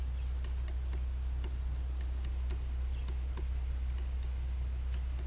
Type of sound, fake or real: real